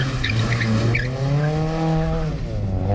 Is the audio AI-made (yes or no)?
no